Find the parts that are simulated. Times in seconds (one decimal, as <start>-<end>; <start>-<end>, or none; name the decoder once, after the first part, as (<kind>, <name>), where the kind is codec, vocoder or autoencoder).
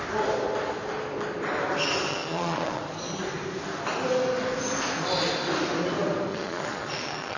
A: 2.1-2.8 (vocoder, Vocos); 6.3-7.4